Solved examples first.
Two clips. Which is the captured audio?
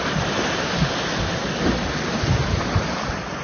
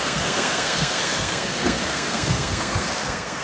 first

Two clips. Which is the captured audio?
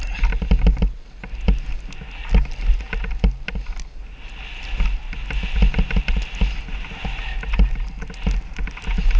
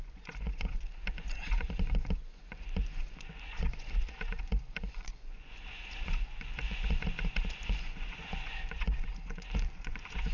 first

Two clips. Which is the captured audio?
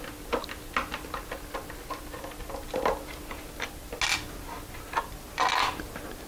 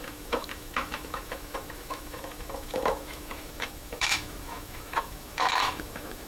first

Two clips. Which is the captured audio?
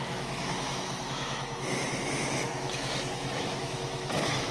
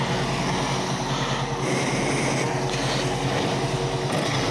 second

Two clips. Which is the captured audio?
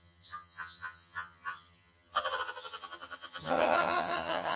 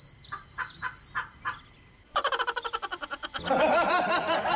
second